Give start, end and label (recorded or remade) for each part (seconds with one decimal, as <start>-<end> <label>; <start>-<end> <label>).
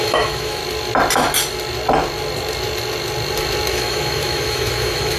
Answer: 0.0-0.6 remade; 0.6-3.7 recorded; 3.7-5.2 remade